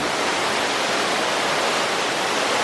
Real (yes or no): yes